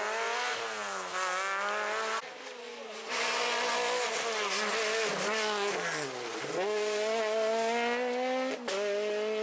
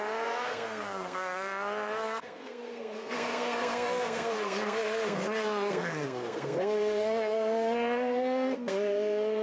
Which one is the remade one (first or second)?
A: second